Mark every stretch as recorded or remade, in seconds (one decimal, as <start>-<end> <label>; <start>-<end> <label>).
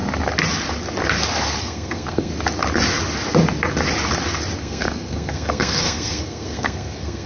0.0-1.6 recorded; 1.6-2.3 remade; 2.3-4.6 recorded; 4.6-7.3 remade